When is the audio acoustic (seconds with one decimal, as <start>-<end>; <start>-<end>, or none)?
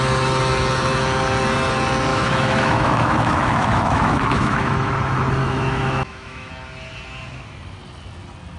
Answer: 0.0-2.1; 4.9-5.4; 6.5-8.6